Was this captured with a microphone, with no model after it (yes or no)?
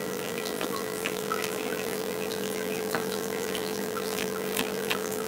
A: no